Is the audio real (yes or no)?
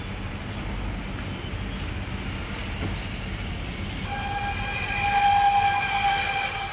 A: yes